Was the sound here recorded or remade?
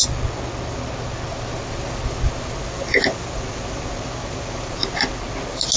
recorded